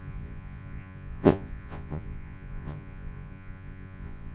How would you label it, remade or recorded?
remade